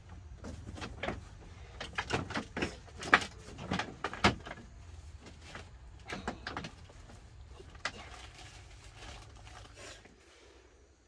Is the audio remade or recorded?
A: recorded